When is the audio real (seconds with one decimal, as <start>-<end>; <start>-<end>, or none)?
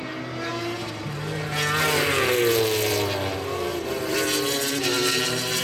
0.0-3.7